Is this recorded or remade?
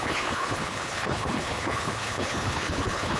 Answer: remade